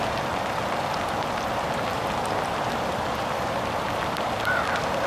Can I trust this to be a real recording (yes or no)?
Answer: yes